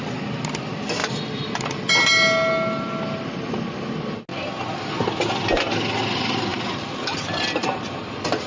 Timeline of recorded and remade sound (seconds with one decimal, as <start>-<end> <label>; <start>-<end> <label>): 0.0-6.5 recorded; 6.5-8.5 remade